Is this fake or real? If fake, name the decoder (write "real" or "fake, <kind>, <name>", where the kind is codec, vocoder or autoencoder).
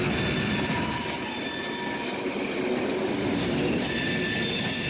real